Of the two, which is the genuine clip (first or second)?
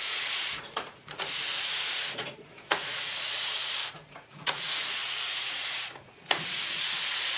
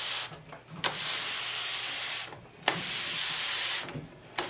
second